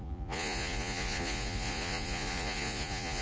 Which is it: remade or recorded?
remade